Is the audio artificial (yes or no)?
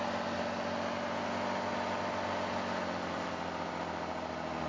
no